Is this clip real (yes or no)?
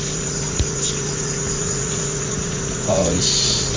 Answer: no